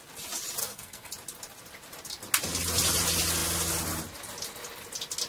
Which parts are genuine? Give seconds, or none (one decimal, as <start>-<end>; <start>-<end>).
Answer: 0.0-0.6; 1.1-5.3